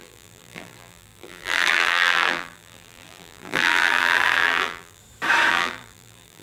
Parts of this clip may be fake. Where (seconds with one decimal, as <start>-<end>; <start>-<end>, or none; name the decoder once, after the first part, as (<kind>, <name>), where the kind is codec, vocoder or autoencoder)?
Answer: 0.0-5.0 (vocoder, BigVGAN v2); 5.5-6.4